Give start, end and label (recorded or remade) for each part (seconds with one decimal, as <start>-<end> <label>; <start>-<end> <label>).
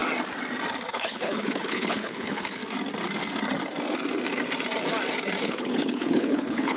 0.0-0.9 recorded; 0.9-2.6 remade; 2.6-5.4 recorded; 5.4-6.8 remade